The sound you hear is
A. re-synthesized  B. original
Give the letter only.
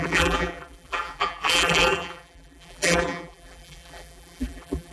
A